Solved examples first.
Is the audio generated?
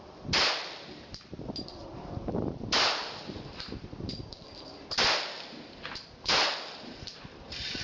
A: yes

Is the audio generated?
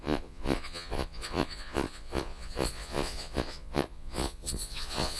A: yes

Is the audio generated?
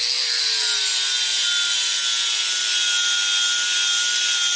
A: no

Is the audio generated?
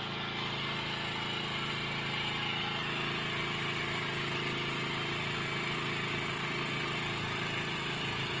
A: no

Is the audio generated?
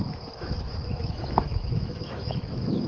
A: yes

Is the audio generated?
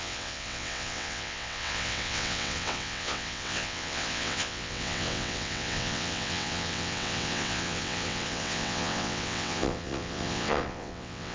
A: yes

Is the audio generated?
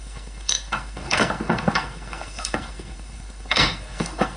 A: yes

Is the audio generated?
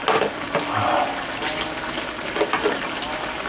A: no